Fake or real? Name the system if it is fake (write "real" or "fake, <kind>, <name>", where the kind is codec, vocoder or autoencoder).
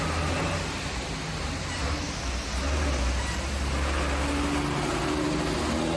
real